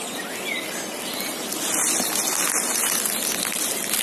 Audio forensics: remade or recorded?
recorded